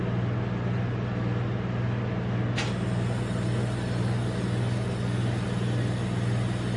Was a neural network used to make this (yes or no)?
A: no